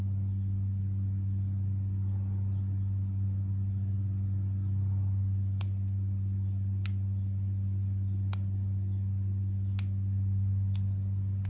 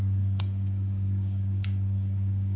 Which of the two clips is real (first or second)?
first